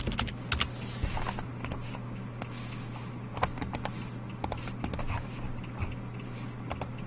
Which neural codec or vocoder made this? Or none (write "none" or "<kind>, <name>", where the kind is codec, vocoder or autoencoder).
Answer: none